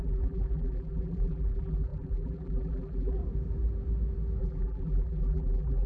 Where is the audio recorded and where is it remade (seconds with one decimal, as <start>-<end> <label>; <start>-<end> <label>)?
0.0-3.2 remade; 3.2-4.4 recorded; 4.4-5.9 remade